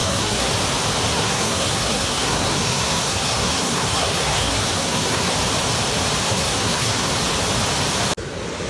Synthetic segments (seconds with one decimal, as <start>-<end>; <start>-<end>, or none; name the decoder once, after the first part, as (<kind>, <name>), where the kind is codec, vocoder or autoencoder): 0.0-0.5 (codec, SNAC); 1.1-5.3; 6.2-7.1

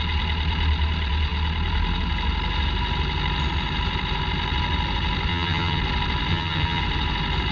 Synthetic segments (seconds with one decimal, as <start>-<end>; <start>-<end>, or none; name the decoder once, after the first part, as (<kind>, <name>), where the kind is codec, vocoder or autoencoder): 5.3-5.8 (vocoder, HiFi-GAN); 6.3-6.8

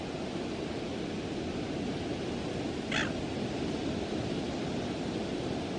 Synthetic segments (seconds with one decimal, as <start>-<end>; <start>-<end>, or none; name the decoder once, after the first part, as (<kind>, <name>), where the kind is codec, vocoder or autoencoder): none